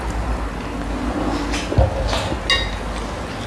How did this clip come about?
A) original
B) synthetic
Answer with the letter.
A